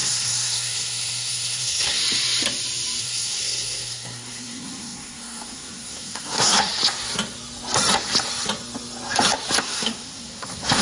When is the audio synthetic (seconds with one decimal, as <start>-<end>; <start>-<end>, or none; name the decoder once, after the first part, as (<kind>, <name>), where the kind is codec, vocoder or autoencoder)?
0.0-2.0 (codec, SNAC); 3.0-6.7; 9.6-10.8